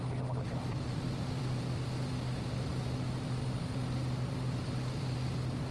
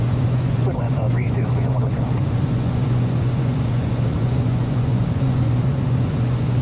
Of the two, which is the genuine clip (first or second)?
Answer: first